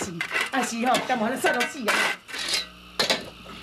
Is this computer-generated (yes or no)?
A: no